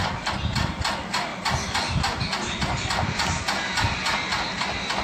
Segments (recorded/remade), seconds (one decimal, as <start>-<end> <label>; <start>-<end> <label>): 0.0-5.0 recorded